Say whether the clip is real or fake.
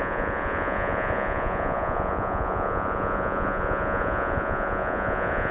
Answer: fake